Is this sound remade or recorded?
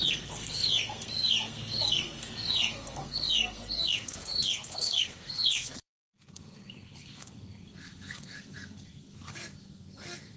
remade